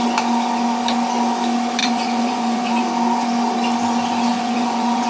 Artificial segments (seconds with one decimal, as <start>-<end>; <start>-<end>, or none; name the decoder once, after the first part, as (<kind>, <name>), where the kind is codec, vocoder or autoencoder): 1.8-2.8 (vocoder, Vocos); 4.3-5.1